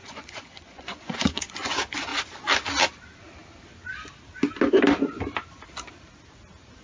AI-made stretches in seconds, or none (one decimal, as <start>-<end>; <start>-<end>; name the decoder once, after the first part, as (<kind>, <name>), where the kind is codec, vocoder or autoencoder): 0.0-1.7 (vocoder, Vocos)